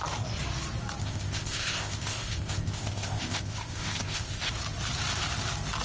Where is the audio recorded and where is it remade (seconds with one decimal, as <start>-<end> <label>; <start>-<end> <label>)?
0.0-1.0 recorded; 1.0-4.5 remade; 4.5-5.8 recorded